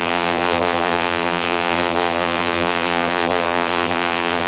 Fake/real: fake